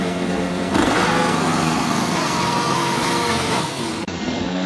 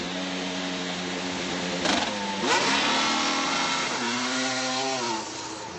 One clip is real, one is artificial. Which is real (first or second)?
second